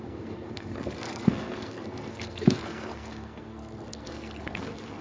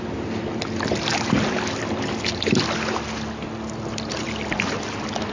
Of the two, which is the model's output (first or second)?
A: first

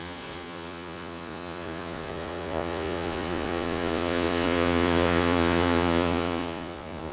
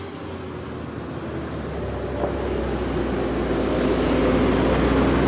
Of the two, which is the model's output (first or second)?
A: first